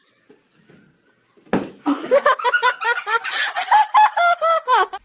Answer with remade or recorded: recorded